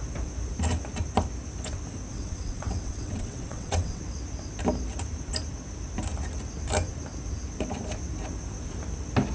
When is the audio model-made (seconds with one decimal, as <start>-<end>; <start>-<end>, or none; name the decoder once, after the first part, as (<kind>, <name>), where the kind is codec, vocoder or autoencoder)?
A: 2.1-4.0 (vocoder, WaveNeXt)